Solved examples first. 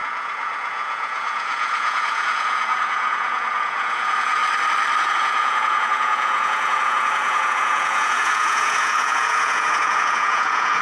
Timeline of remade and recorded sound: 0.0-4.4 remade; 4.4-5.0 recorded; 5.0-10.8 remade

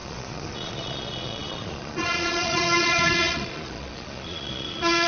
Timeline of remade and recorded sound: 0.0-5.1 remade

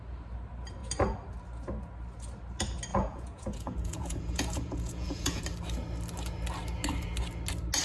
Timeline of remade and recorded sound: 0.0-2.9 recorded; 2.9-5.4 remade; 5.4-7.8 recorded

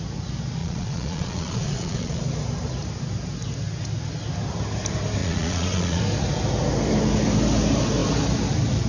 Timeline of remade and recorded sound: 0.0-0.6 recorded; 0.6-2.2 remade; 2.2-5.2 recorded; 5.2-6.0 remade; 6.0-8.9 recorded

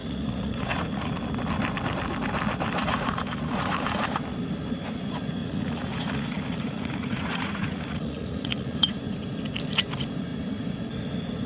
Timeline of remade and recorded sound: 0.0-1.1 remade; 1.1-2.8 recorded; 2.8-4.2 remade; 4.2-5.4 recorded; 5.4-9.0 remade; 9.0-11.5 recorded

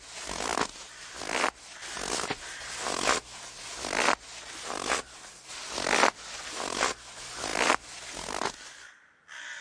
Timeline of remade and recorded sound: 0.0-9.6 recorded